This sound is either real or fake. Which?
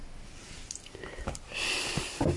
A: real